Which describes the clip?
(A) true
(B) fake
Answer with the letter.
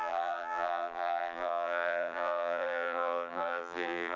B